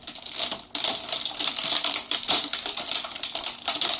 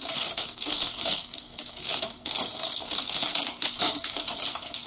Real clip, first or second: first